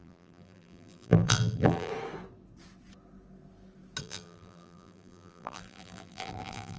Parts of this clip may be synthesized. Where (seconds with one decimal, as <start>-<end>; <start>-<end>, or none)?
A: 0.0-1.9; 4.0-6.8